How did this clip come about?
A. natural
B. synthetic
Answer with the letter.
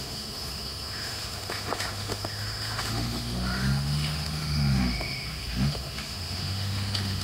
B